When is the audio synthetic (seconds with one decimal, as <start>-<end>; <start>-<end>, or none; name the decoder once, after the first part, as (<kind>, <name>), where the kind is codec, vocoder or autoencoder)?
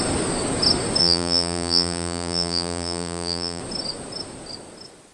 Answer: 1.0-3.6 (vocoder, BigVGAN v2)